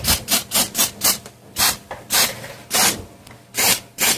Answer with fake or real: fake